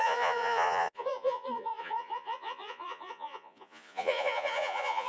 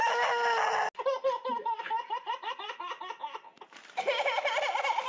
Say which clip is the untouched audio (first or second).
second